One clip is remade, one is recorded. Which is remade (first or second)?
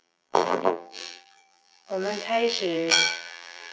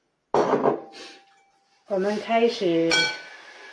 first